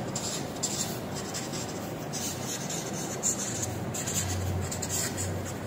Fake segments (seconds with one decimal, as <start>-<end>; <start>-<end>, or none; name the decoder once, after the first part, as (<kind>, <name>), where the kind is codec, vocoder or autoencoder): none